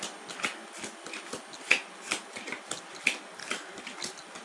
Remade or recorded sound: recorded